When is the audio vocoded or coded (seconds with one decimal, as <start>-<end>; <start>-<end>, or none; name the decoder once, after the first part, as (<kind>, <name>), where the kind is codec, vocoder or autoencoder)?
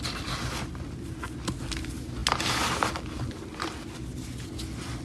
none